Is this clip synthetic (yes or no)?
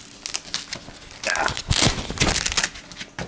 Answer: no